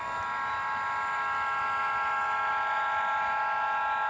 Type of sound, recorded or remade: recorded